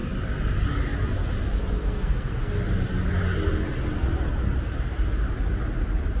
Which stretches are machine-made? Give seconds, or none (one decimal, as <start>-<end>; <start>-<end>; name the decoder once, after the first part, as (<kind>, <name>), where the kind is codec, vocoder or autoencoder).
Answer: 1.8-2.5 (codec, SNAC)